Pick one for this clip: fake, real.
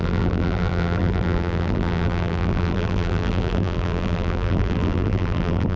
fake